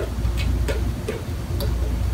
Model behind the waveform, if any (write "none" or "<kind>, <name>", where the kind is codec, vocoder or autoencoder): none